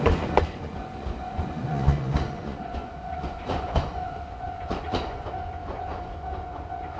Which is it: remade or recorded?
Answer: remade